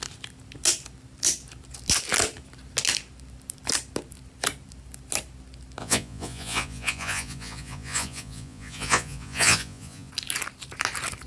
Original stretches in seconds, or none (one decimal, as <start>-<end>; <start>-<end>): 0.0-5.8; 10.1-11.3